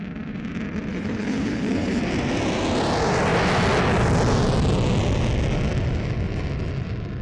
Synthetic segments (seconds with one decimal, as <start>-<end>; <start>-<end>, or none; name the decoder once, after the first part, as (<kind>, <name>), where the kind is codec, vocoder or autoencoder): 0.9-2.0 (codec, HILCodec)